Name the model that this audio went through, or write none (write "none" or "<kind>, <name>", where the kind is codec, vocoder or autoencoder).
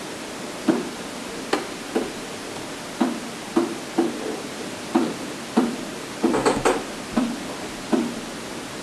none